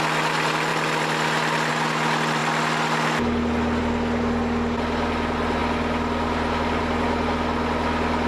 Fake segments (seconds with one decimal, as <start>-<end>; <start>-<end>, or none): none